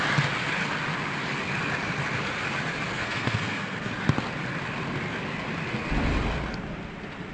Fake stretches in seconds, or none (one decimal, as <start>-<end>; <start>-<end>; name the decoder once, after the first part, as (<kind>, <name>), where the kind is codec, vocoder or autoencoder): 2.9-3.9 (codec, SNAC)

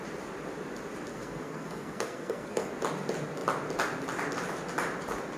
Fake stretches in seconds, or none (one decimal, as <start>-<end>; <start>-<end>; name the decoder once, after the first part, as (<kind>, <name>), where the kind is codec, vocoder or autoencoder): 1.1-2.7 (codec, SNAC)

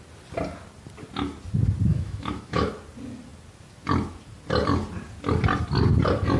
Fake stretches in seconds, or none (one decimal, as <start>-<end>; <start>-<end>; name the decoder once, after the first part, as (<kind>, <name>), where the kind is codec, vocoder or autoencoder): 1.9-2.7 (autoencoder, DAC-VAE)

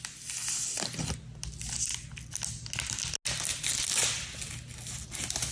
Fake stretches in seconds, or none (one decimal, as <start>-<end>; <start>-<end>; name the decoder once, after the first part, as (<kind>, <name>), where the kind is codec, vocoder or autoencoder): none